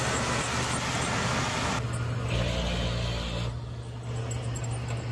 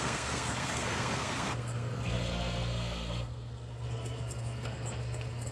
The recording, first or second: first